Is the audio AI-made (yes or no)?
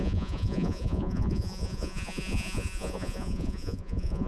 yes